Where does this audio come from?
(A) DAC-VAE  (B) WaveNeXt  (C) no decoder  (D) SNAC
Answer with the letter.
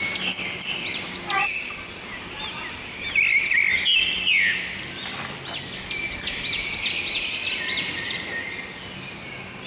C